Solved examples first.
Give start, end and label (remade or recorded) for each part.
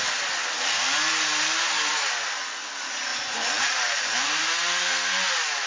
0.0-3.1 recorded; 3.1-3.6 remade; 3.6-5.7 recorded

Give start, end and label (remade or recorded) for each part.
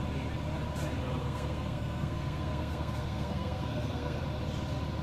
0.0-1.2 recorded; 1.2-4.2 remade; 4.2-5.0 recorded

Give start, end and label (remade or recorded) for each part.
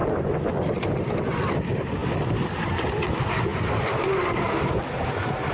0.0-5.5 recorded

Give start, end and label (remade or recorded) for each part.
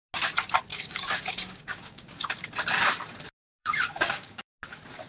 0.0-0.7 recorded; 0.7-2.5 remade; 2.5-3.6 recorded; 3.6-4.5 remade; 4.5-5.1 recorded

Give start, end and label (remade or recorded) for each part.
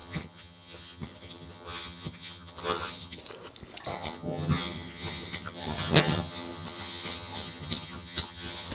0.0-3.2 remade; 3.2-3.9 recorded; 3.9-8.7 remade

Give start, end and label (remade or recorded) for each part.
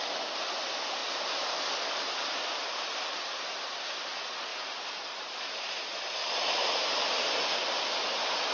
0.0-4.5 recorded; 4.5-5.7 remade; 5.7-6.2 recorded; 6.2-7.4 remade; 7.4-8.5 recorded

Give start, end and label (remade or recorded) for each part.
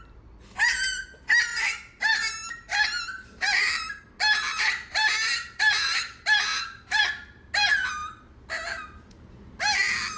0.0-10.2 recorded